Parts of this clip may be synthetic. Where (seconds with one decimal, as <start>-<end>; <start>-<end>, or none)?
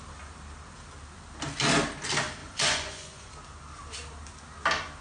2.4-3.3